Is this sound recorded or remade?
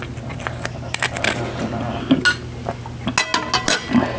recorded